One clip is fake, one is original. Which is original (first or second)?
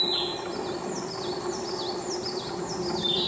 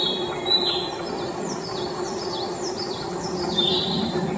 first